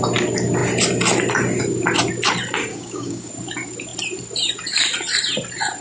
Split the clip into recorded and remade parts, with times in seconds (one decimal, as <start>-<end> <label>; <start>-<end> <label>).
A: 0.0-2.7 recorded; 2.7-3.3 remade; 3.3-5.8 recorded